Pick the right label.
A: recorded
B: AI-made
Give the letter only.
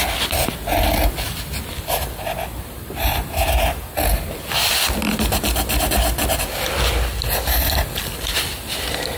A